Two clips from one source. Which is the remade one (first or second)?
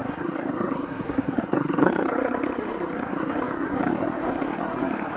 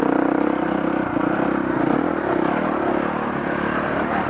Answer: first